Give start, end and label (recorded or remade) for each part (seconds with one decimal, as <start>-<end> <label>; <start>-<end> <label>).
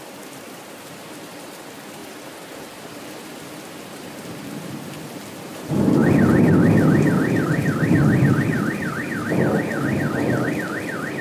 0.0-2.0 remade; 2.0-4.1 recorded; 4.1-11.2 remade